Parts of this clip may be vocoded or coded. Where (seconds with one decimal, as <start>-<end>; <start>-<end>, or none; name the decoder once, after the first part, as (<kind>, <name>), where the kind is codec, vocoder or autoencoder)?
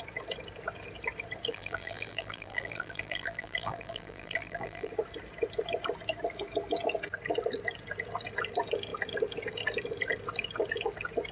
1.5-4.9 (vocoder, BigVGAN v2)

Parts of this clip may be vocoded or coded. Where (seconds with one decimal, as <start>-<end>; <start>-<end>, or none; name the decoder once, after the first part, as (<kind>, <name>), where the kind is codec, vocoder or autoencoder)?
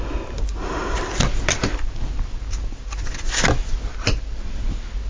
none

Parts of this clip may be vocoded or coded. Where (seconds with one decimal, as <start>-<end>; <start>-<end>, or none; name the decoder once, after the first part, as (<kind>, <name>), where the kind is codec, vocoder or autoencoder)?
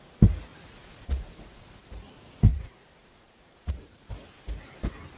0.5-1.8 (vocoder, Vocos); 2.5-4.1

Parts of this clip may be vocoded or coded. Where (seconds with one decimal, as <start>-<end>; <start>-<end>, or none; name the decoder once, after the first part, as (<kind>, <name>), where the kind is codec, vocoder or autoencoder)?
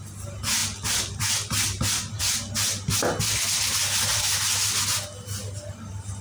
none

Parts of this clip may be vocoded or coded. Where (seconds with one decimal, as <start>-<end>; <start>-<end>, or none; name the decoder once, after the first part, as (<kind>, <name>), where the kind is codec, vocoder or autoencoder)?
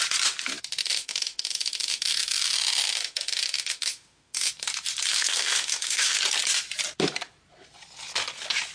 0.8-4.5 (autoencoder, DAC-VAE); 5.1-6.2